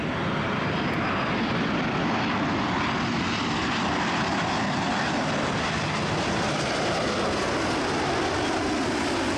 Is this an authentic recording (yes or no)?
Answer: yes